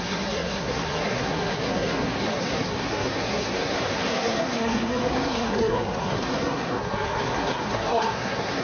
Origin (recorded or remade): remade